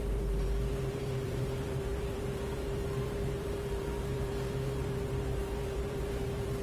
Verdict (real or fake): fake